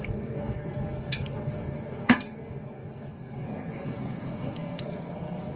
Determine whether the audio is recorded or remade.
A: remade